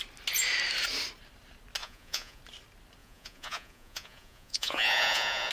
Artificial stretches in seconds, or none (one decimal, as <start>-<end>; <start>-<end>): 1.8-2.4; 3.0-5.5